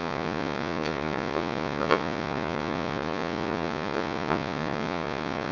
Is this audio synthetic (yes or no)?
yes